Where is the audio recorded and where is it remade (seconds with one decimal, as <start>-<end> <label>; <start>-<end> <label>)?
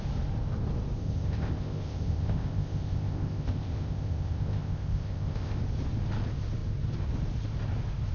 0.0-1.0 recorded; 1.0-5.6 remade; 5.6-8.1 recorded